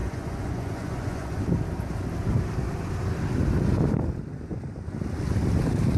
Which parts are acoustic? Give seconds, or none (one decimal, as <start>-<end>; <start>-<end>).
1.4-6.0

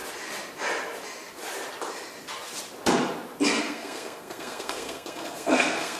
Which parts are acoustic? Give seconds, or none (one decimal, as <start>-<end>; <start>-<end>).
0.0-3.6

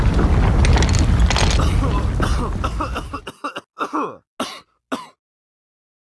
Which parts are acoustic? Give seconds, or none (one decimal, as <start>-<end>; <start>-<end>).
0.0-6.2

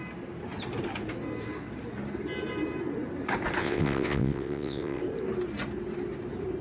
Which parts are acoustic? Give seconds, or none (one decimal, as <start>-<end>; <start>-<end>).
0.0-3.6; 5.0-6.6

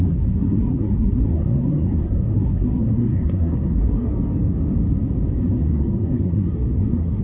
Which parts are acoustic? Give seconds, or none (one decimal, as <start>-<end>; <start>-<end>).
4.1-5.4

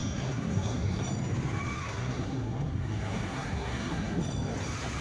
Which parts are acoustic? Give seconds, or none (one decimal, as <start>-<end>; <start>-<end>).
1.0-1.8; 4.2-5.0

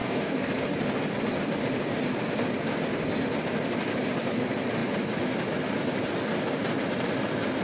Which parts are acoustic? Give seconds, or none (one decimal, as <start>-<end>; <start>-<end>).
0.5-7.6

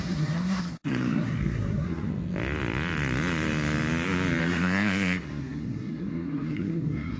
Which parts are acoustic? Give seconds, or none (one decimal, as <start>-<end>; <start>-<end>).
2.1-4.4